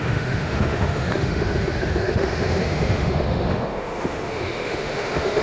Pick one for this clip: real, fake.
fake